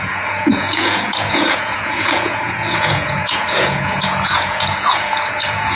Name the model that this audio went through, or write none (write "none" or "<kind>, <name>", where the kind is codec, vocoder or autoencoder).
vocoder, Vocos